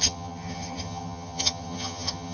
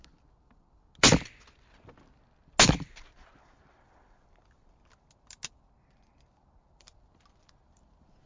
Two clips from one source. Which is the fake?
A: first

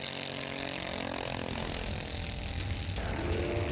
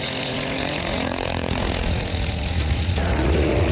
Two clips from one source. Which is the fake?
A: second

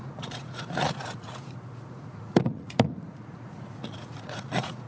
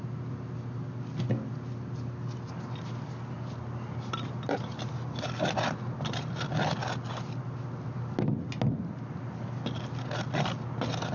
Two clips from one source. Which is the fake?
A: first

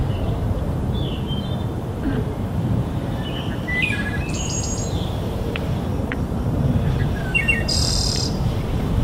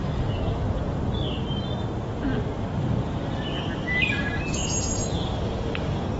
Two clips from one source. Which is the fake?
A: first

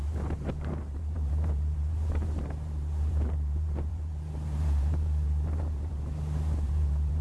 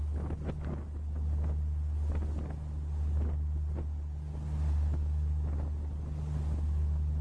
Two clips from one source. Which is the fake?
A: first